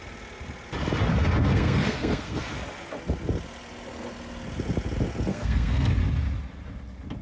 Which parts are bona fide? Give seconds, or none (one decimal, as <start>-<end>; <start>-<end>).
0.0-1.4; 2.4-5.3; 5.9-7.2